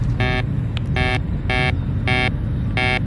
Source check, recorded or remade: recorded